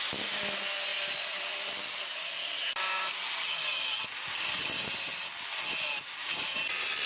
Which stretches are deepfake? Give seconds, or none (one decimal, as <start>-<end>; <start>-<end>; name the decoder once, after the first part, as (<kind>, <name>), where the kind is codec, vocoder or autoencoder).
0.9-2.7 (vocoder, BigVGAN v2)

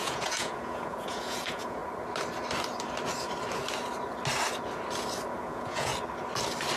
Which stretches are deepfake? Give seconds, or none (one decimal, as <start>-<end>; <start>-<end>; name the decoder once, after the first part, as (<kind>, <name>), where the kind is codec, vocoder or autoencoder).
0.0-1.8 (vocoder, Vocos); 5.3-5.9

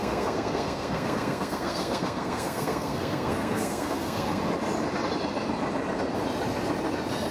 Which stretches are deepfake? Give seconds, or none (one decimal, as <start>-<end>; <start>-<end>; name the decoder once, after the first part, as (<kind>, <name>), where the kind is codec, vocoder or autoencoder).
0.0-4.4 (codec, SNAC)

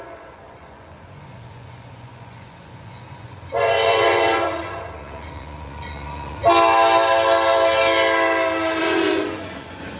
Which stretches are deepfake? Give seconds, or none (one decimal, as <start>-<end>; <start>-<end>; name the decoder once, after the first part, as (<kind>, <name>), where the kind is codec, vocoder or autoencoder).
0.0-6.4 (vocoder, Vocos); 8.8-10.0

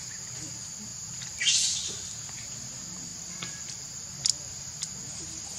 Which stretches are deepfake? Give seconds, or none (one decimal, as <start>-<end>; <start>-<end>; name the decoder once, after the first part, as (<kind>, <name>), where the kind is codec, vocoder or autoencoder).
none

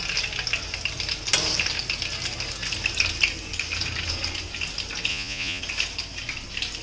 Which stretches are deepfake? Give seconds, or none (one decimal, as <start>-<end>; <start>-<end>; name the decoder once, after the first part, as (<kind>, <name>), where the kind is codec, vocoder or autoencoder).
5.1-5.6 (vocoder, Vocos)

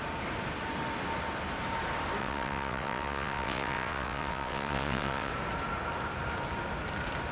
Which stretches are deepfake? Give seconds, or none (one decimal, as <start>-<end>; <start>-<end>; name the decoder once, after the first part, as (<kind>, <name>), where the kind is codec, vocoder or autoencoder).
2.2-5.3 (vocoder, WaveNeXt)